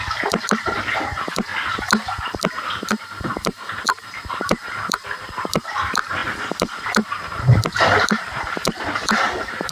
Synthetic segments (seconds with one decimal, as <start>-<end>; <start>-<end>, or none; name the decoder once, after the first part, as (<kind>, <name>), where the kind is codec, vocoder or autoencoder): 0.0-1.5 (vocoder, BigVGAN v2); 2.9-9.7